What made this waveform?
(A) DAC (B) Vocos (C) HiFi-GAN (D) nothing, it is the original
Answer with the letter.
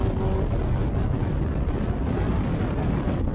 D